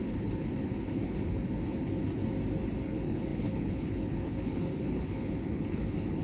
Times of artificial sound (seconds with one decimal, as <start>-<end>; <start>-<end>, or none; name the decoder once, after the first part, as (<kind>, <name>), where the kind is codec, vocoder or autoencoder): 0.0-2.2 (codec, HILCodec); 2.8-6.2